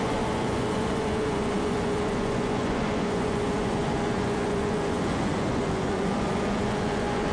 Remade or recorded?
remade